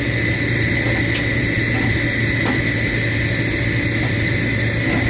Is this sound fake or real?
real